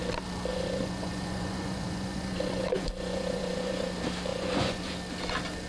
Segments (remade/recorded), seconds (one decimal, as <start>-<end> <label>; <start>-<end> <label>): 0.0-0.5 recorded; 0.5-3.9 remade; 3.9-4.3 recorded; 4.3-4.9 remade; 4.9-5.7 recorded